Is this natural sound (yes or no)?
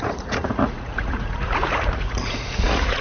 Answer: no